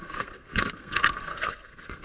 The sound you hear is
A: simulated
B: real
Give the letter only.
A